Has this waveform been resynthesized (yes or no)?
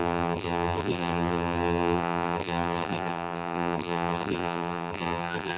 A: yes